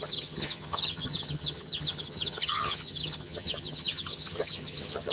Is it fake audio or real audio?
fake